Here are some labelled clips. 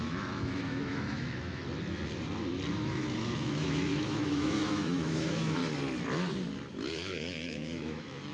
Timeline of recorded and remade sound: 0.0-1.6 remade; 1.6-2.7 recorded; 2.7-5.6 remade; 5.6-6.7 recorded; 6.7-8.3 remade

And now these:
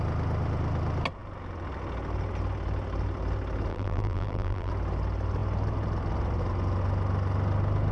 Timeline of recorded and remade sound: 0.0-3.7 recorded; 3.7-4.7 remade; 4.7-7.9 recorded

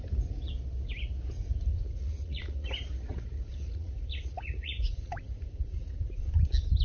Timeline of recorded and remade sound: 0.0-1.7 recorded; 1.7-2.7 remade; 2.7-3.1 recorded; 3.1-6.2 remade; 6.2-6.8 recorded

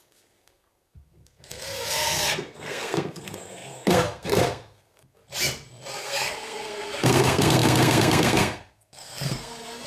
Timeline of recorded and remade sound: 0.0-5.2 remade; 5.2-6.0 recorded; 6.0-9.9 remade

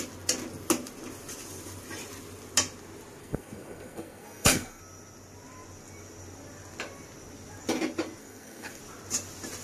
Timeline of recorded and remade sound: 0.0-3.2 recorded; 3.2-4.8 remade; 4.8-8.2 recorded; 8.2-8.8 remade; 8.8-9.6 recorded

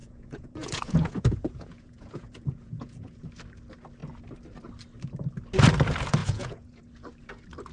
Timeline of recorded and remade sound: 0.0-3.2 remade; 3.2-6.2 recorded; 6.2-6.8 remade; 6.8-7.7 recorded